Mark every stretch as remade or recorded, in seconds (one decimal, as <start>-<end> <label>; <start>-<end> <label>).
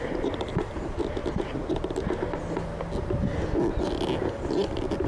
0.0-5.1 recorded